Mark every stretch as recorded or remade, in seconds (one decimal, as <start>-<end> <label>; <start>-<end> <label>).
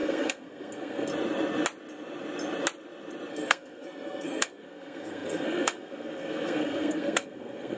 0.0-1.1 remade; 1.1-3.3 recorded; 3.3-7.8 remade